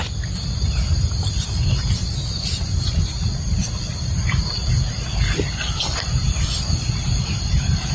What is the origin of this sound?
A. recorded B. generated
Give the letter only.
A